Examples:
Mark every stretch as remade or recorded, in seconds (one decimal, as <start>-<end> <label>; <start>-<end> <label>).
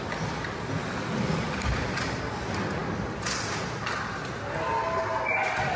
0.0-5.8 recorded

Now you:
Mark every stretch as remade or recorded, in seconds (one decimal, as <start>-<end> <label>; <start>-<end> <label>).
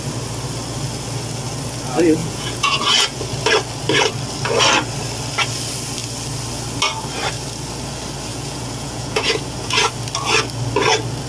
0.0-2.2 recorded; 2.2-3.2 remade; 3.2-8.3 recorded; 8.3-9.9 remade; 9.9-11.3 recorded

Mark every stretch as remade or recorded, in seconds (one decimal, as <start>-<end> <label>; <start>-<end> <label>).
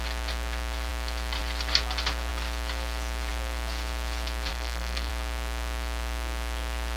0.0-4.5 recorded; 4.5-5.1 remade; 5.1-7.0 recorded